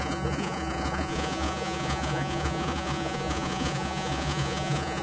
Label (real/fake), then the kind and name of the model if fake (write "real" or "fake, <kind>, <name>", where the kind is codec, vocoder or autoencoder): fake, vocoder, Vocos